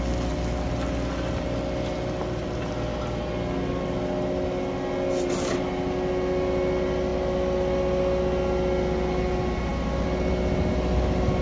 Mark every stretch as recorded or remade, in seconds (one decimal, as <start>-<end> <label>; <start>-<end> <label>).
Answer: 0.0-11.4 recorded